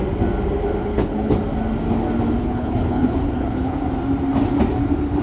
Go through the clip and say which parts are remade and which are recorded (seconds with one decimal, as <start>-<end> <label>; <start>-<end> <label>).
0.0-0.8 recorded; 0.8-1.4 remade; 1.4-2.4 recorded; 2.4-3.8 remade; 3.8-5.2 recorded